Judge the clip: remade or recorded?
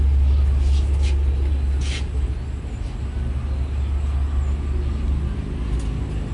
recorded